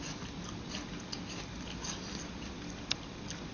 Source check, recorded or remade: recorded